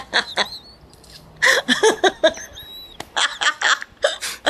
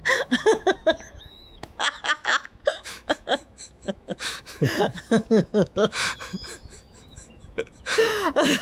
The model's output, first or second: second